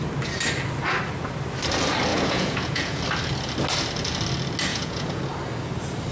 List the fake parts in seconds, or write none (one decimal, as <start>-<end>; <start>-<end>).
2.1-3.0; 4.7-5.2